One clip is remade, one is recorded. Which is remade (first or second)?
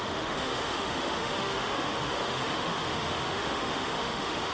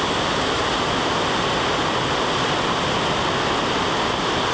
first